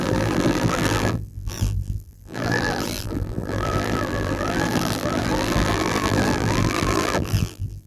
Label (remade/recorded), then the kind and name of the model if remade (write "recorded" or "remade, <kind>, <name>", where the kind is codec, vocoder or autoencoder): remade, vocoder, BigVGAN v2